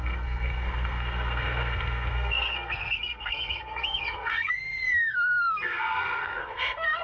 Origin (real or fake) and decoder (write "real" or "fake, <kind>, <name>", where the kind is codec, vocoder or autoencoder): fake, codec, SNAC